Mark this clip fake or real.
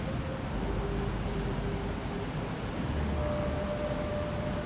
real